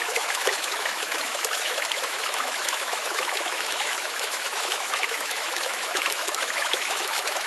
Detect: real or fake fake